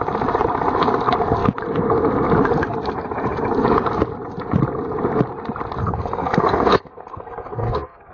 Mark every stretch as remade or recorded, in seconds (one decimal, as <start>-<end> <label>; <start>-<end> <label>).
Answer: 0.0-5.8 recorded; 5.8-8.1 remade